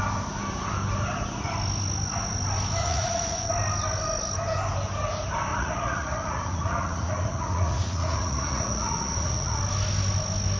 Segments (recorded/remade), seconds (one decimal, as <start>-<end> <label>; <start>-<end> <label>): 0.0-2.8 recorded; 2.8-3.5 remade; 3.5-5.5 recorded; 5.5-9.6 remade; 9.6-10.6 recorded